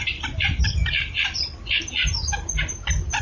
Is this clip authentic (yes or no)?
yes